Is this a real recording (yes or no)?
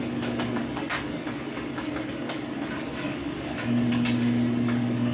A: no